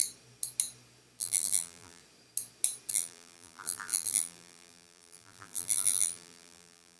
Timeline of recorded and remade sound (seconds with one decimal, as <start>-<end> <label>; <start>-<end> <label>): 0.0-1.2 recorded; 1.2-2.0 remade; 2.0-2.9 recorded; 2.9-7.0 remade